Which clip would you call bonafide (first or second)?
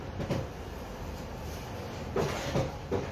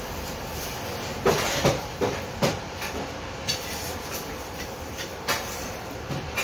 first